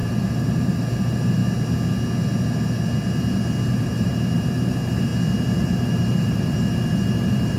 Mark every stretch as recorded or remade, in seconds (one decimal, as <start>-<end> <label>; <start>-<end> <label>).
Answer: 0.0-1.4 remade; 1.4-3.7 recorded; 3.7-5.1 remade; 5.1-5.6 recorded; 5.6-7.6 remade